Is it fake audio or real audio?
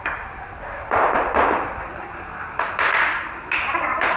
real